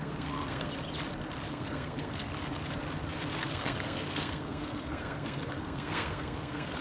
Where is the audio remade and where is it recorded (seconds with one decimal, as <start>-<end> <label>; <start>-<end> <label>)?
0.0-0.7 remade; 0.7-1.5 recorded; 1.5-2.3 remade; 2.3-3.4 recorded; 3.4-6.8 remade